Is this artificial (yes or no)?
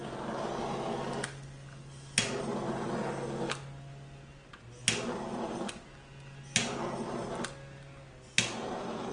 no